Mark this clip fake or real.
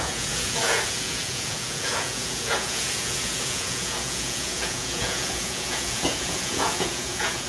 fake